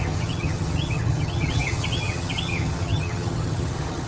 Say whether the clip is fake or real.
fake